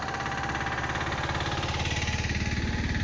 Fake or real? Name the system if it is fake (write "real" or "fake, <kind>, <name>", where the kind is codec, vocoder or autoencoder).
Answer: real